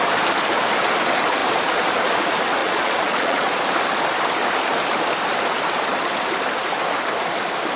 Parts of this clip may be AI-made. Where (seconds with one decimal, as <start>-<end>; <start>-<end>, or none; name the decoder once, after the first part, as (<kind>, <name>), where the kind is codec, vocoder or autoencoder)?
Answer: 2.6-3.6 (vocoder, Vocos)